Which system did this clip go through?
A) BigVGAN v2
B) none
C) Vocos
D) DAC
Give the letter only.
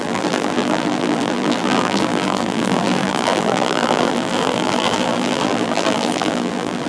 A